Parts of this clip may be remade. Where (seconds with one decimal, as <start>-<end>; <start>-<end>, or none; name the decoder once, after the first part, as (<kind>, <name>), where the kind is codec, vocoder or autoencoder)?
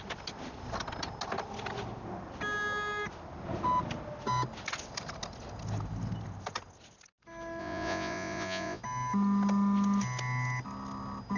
7.6-8.8 (vocoder, Vocos)